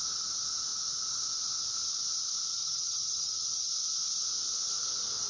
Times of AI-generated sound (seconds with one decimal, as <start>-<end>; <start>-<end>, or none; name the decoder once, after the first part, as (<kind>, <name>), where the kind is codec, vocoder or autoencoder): 2.5-3.7 (vocoder, HiFi-GAN)